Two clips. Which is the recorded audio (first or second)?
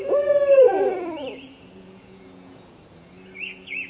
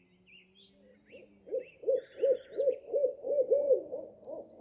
second